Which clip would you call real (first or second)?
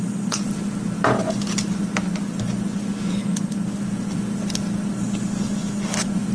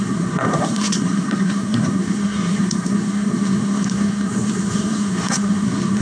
first